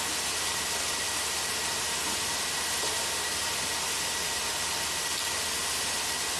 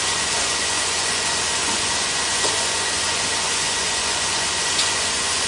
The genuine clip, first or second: first